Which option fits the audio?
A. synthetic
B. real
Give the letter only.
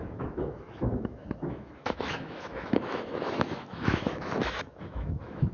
A